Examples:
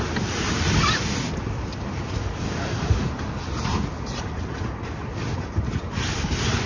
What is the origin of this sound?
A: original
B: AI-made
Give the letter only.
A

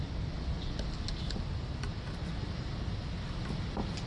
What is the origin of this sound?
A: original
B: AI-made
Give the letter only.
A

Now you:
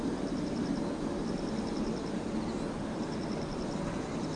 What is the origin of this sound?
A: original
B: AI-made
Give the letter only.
A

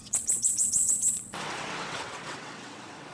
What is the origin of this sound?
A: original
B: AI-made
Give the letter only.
B